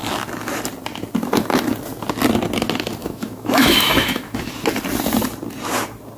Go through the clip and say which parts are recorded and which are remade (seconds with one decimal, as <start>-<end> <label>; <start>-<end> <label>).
0.0-3.0 recorded; 3.0-4.5 remade; 4.5-6.2 recorded